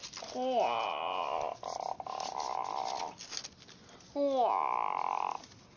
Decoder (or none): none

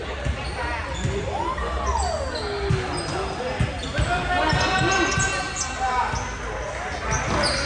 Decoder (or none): none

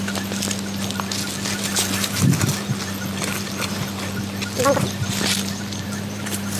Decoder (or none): vocoder, BigVGAN v2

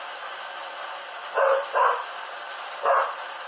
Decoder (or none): vocoder, BigVGAN v2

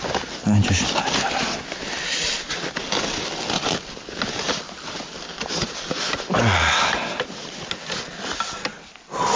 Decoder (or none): none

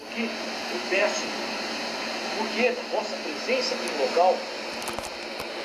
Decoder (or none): none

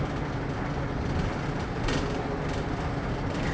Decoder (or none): vocoder, BigVGAN v2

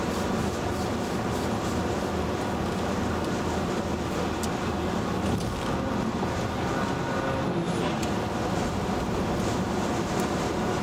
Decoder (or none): none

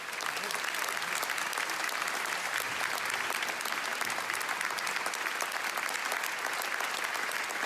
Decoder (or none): none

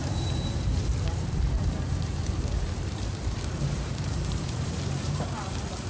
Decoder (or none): vocoder, BigVGAN v2